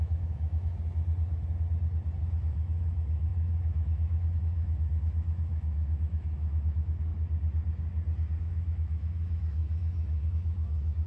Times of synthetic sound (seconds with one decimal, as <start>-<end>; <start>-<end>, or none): 0.0-0.7; 2.2-7.1; 8.4-11.1